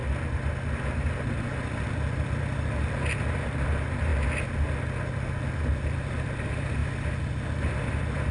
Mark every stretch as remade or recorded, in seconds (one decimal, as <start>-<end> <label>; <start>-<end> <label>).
0.0-8.3 recorded